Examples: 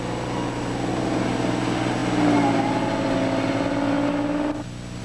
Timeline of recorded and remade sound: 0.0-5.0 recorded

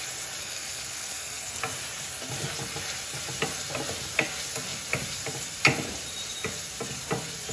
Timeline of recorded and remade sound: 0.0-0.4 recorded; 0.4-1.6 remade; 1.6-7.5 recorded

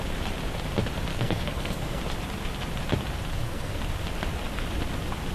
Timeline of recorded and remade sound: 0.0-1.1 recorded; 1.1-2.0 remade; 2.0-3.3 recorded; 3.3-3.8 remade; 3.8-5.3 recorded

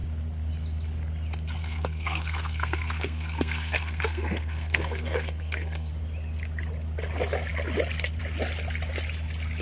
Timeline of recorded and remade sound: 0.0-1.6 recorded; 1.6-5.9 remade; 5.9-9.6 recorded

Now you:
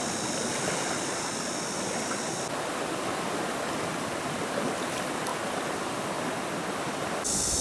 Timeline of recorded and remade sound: 0.0-7.6 recorded

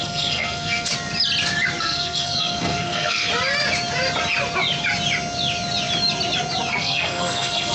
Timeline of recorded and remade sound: 0.0-0.9 remade; 0.9-1.8 recorded; 1.8-3.3 remade; 3.3-6.7 recorded; 6.7-7.7 remade